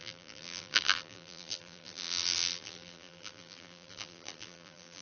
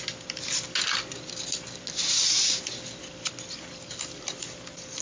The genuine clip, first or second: second